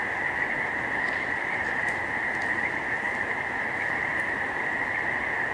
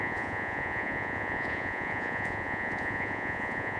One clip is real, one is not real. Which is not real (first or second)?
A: second